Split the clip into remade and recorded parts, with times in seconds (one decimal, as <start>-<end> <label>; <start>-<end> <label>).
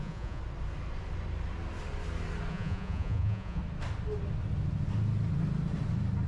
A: 0.0-0.4 remade; 0.4-2.5 recorded; 2.5-3.6 remade; 3.6-6.3 recorded